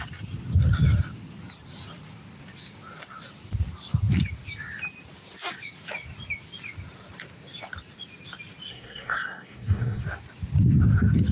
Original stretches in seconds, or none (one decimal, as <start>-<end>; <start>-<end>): 0.0-8.7; 10.0-11.3

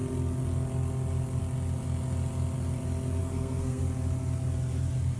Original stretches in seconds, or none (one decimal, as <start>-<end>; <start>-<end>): 0.0-3.2; 3.8-5.2

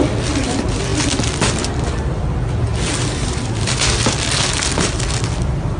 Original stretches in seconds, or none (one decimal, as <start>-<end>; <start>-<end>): 0.0-5.8

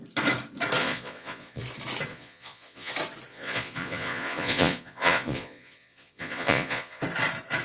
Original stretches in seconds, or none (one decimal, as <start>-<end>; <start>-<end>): 0.0-0.8; 1.6-2.1; 2.9-3.3; 7.0-7.6

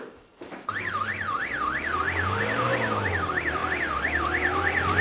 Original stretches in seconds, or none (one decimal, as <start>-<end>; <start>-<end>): none

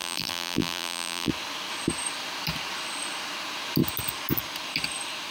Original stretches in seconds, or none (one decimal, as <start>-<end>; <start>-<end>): 1.3-5.3

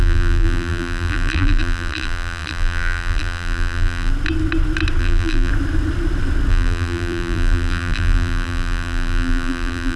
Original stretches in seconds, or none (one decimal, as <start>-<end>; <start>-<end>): 4.1-5.0; 5.5-6.5

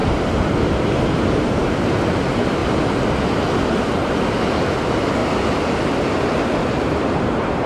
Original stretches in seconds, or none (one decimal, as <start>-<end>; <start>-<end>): 2.6-4.8; 5.2-7.0